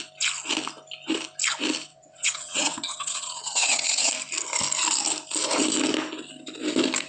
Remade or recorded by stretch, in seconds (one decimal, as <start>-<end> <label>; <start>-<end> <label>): 0.0-1.9 recorded; 1.9-4.1 remade; 4.1-7.1 recorded